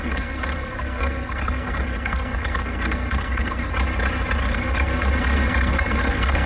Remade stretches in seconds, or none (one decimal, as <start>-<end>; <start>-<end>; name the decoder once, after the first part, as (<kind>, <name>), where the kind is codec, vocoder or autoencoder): 0.0-3.7 (codec, SNAC); 4.4-6.5